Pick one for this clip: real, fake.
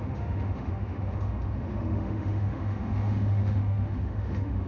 fake